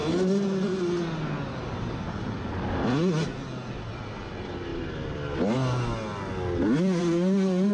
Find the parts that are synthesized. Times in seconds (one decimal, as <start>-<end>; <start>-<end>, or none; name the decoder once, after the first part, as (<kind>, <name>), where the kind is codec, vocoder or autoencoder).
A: none